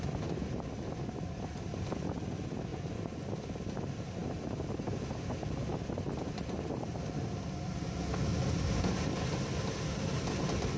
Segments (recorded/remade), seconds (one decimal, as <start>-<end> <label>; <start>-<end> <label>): 0.0-2.7 recorded; 2.7-3.3 remade; 3.3-10.8 recorded